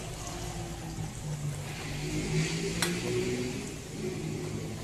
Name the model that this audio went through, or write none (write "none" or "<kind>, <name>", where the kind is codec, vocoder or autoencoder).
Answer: none